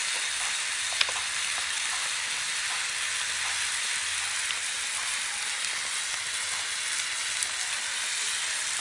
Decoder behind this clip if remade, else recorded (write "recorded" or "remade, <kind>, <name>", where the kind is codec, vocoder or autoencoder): recorded